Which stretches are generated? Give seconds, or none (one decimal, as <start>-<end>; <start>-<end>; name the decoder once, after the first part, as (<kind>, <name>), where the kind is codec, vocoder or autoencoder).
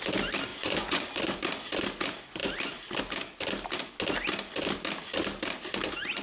0.5-1.1 (vocoder, Vocos)